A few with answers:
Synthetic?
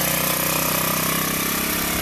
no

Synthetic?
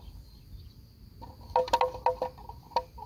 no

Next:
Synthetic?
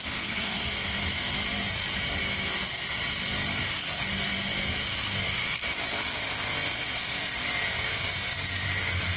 no